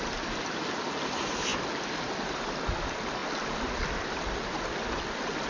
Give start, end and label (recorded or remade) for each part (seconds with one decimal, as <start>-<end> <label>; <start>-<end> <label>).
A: 0.0-5.5 recorded

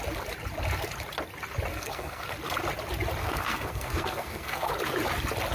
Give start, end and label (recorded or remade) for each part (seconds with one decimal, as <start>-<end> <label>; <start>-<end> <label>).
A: 0.0-1.7 recorded; 1.7-2.3 remade; 2.3-3.2 recorded; 3.2-4.7 remade; 4.7-5.5 recorded